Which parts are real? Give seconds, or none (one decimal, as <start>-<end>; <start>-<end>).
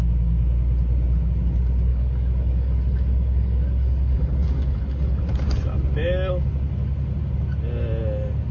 0.0-1.9; 5.2-8.5